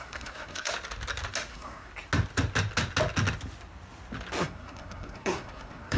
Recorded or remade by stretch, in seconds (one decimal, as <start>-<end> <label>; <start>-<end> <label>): 0.0-0.7 remade; 0.7-1.5 recorded; 1.5-1.9 remade; 1.9-4.4 recorded; 4.4-6.0 remade